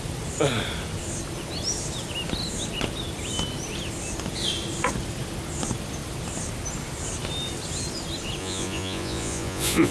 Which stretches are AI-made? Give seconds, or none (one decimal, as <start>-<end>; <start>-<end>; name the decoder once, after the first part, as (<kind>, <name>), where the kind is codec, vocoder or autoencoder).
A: 8.4-9.9 (vocoder, Vocos)